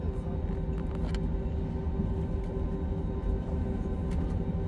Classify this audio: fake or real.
real